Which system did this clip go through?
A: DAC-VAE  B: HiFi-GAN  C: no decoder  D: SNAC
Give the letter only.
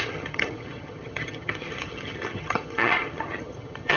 B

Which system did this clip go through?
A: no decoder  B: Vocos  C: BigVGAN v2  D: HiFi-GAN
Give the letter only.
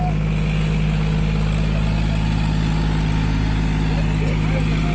A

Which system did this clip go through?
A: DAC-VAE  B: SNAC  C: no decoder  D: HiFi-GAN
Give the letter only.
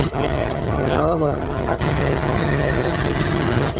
D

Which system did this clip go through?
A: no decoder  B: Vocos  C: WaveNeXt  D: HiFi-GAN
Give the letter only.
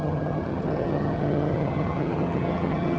D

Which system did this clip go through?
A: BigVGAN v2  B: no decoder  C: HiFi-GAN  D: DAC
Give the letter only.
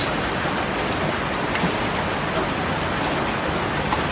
B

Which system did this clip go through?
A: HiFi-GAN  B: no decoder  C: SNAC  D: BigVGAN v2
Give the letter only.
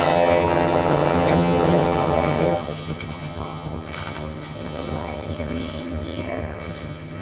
A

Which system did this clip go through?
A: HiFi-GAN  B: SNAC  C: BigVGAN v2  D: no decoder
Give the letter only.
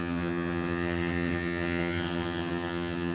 A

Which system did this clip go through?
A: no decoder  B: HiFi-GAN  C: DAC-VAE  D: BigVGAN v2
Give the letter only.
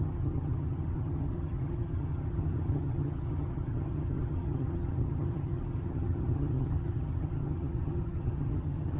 B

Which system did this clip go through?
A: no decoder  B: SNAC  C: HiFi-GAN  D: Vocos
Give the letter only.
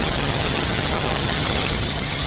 C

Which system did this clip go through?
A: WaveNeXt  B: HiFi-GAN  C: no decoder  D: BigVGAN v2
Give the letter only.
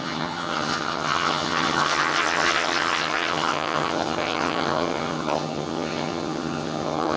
B